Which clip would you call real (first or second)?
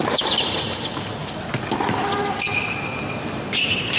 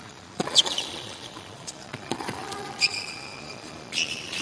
first